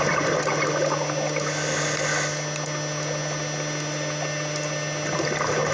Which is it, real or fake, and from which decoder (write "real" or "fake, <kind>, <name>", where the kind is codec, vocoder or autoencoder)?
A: real